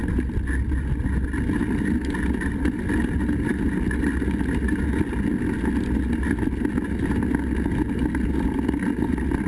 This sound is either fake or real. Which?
real